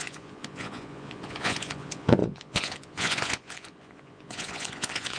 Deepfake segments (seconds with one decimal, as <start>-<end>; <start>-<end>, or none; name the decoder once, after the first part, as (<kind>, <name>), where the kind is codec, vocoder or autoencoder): 0.0-5.2 (vocoder, Vocos)